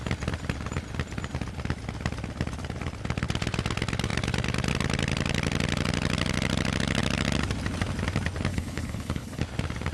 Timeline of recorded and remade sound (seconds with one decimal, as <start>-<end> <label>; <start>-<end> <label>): 0.0-8.5 recorded; 8.5-9.4 remade; 9.4-9.9 recorded